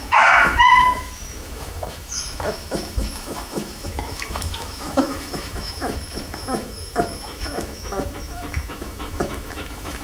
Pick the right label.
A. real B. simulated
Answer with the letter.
B